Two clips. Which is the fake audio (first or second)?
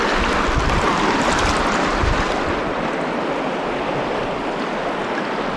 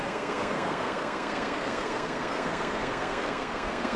second